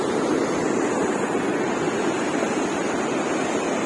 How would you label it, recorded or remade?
recorded